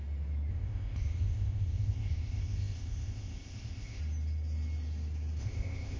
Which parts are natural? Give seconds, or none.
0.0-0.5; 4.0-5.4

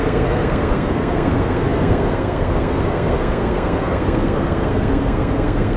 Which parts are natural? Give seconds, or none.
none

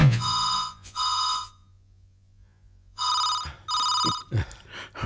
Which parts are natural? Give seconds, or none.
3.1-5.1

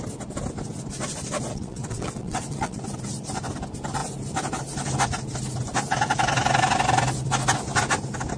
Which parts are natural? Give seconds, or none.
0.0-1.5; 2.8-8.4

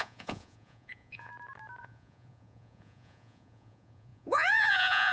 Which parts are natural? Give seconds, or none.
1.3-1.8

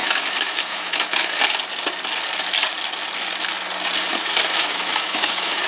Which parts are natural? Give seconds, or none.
1.4-4.1

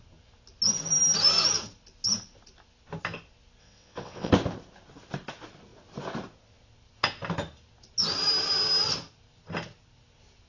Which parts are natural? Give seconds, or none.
0.0-3.6; 4.3-10.5

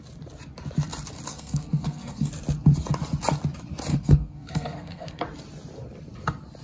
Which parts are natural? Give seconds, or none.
0.0-1.3; 2.3-3.9; 5.2-6.6